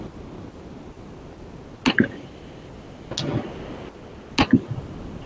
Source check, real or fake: real